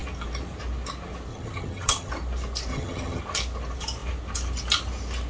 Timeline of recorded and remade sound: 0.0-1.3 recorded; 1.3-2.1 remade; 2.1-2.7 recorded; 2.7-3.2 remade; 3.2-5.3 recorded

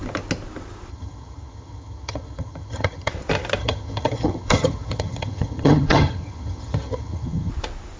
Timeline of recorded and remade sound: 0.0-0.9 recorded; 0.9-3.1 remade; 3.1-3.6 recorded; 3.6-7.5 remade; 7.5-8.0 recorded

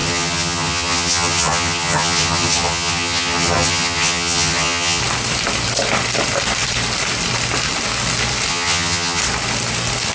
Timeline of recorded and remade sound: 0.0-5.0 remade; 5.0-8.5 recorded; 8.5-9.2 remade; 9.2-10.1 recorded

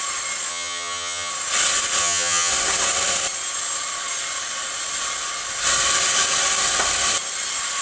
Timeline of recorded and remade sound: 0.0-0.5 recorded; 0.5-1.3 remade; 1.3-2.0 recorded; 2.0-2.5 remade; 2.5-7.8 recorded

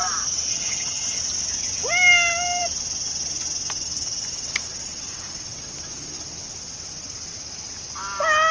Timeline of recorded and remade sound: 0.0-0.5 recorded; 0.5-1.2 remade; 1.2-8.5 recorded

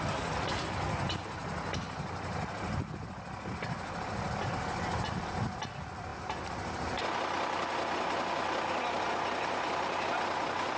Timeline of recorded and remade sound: 0.0-10.8 recorded

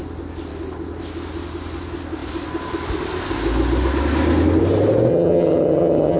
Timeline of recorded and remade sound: 0.0-5.1 recorded; 5.1-6.2 remade

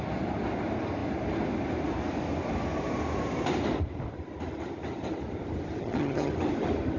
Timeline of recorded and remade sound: 0.0-5.8 recorded; 5.8-6.3 remade; 6.3-7.0 recorded